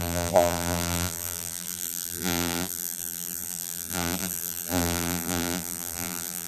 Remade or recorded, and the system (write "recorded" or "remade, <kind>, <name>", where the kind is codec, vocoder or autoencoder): remade, vocoder, BigVGAN v2